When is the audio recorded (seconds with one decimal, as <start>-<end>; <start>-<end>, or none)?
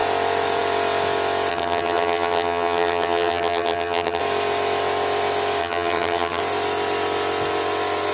0.0-1.5; 4.2-5.6; 6.4-8.1